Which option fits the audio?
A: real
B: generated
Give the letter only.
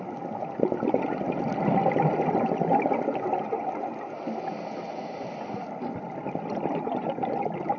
A